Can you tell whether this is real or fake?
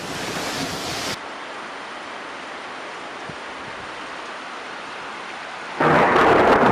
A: real